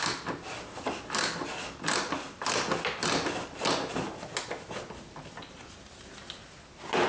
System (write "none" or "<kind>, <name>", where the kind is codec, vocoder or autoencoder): none